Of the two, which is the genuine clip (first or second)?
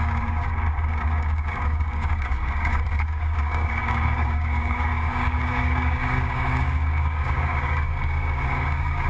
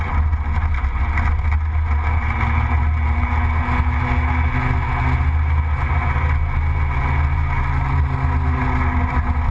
second